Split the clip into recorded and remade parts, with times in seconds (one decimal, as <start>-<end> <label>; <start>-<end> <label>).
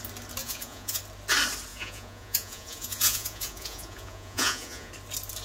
0.0-0.4 recorded; 0.4-1.0 remade; 1.0-1.7 recorded; 1.7-4.9 remade; 4.9-5.4 recorded